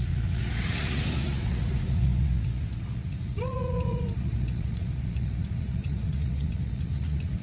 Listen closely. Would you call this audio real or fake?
fake